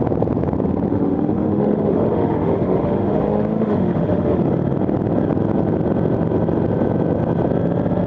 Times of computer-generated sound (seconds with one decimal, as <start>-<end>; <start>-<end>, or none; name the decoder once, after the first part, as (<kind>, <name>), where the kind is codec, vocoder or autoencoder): 0.9-4.4 (autoencoder, DAC-VAE)